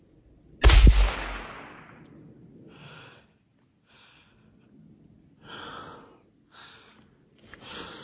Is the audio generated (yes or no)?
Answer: no